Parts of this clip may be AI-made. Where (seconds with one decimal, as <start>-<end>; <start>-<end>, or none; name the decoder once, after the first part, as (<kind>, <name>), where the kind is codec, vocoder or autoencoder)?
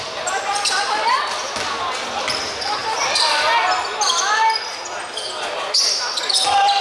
none